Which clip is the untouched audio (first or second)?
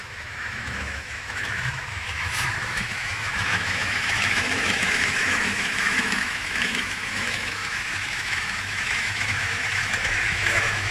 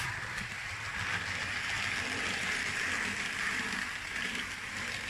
second